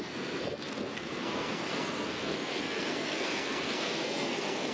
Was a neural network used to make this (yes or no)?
yes